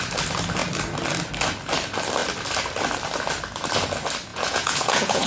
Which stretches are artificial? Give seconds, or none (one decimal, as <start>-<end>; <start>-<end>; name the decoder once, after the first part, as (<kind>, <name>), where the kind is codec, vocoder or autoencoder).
4.3-5.3 (vocoder, Vocos)